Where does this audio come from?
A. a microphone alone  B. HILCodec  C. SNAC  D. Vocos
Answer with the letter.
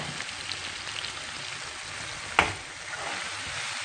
A